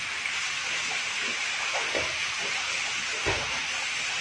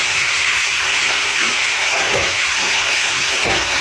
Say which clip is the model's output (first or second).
second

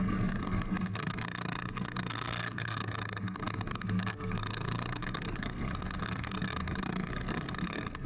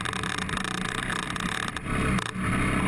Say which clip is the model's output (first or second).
first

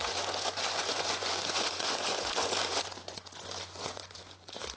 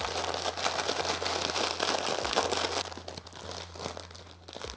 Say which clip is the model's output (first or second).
first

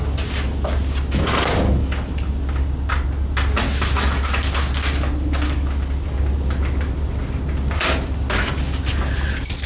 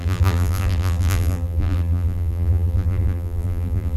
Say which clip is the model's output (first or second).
second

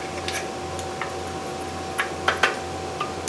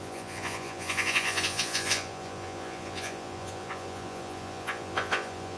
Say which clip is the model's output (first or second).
second